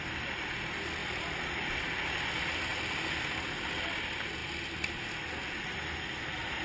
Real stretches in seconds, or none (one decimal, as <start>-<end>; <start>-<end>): 0.0-1.0; 1.6-6.6